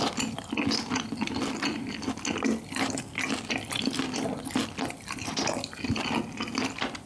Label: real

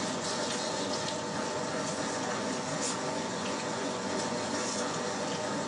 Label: fake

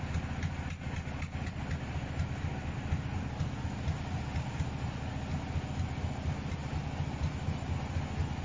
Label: real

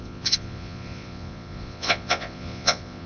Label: fake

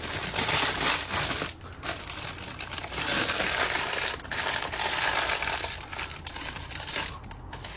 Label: real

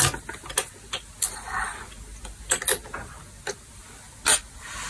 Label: real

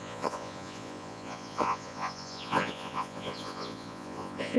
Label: fake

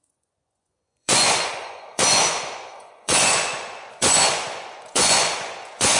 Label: fake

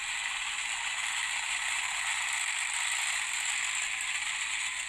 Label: real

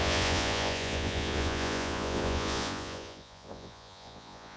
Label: fake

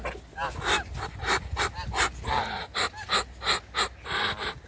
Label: real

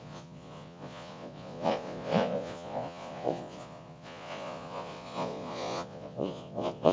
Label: fake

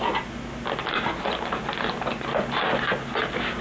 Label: real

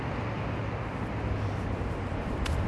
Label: real